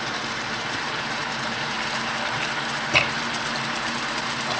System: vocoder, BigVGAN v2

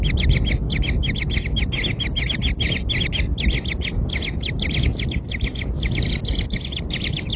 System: none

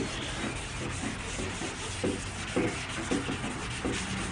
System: none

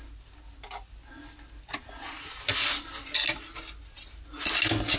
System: none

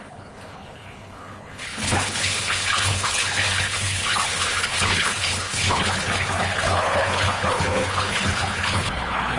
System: codec, HILCodec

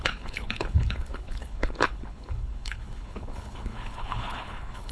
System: codec, HILCodec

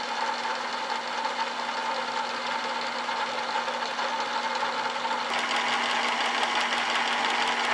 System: none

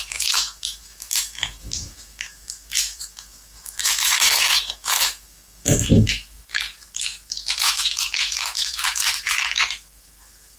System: autoencoder, DAC-VAE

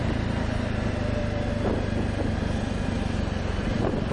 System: none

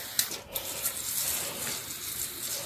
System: none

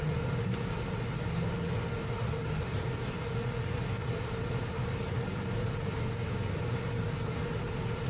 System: none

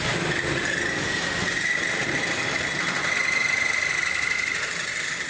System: none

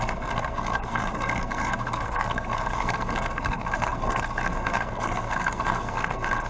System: codec, SNAC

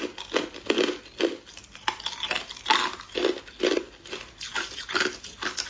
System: none